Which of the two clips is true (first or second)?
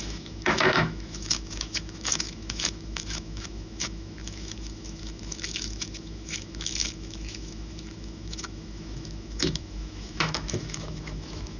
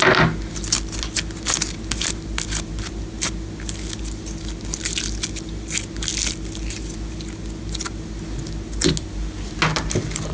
second